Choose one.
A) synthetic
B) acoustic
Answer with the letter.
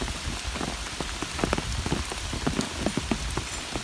B